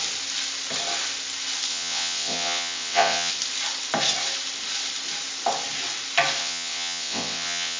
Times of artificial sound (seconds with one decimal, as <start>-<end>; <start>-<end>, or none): 1.7-3.3; 6.4-7.8